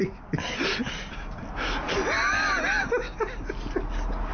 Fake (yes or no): no